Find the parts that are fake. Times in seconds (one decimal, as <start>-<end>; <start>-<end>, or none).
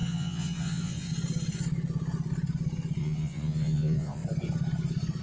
0.0-1.1; 3.0-4.2